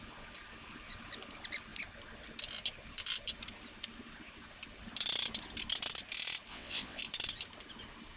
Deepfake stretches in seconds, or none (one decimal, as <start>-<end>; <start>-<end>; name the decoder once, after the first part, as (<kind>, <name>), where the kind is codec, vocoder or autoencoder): 6.5-7.0 (vocoder, WaveNeXt)